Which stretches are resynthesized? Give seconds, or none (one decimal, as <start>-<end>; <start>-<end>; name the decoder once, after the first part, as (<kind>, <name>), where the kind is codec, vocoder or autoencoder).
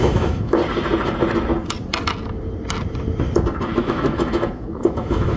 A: 0.0-0.6 (autoencoder, DAC-VAE); 3.8-5.4